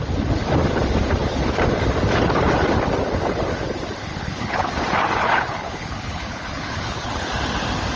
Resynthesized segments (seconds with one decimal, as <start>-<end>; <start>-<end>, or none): 4.0-4.7; 5.2-7.3